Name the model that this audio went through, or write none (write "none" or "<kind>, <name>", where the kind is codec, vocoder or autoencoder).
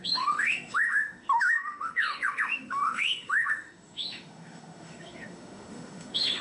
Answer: autoencoder, DAC-VAE